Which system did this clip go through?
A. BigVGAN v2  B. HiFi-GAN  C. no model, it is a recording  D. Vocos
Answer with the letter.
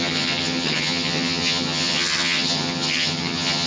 B